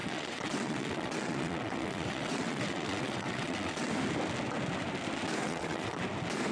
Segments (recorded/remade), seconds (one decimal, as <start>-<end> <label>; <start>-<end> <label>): 0.0-3.9 remade; 3.9-5.4 recorded; 5.4-6.0 remade; 6.0-6.5 recorded